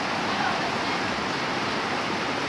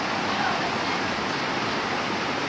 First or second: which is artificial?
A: first